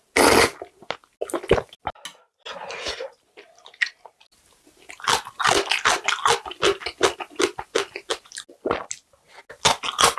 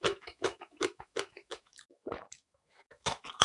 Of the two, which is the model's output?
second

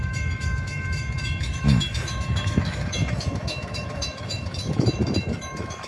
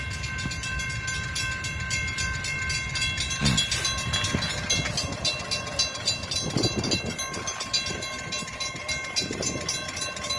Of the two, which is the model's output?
first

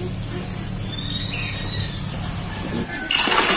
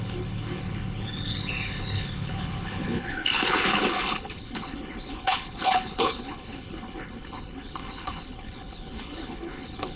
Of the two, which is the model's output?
second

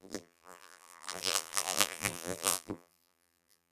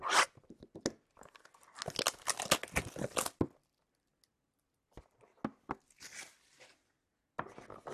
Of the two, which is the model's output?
first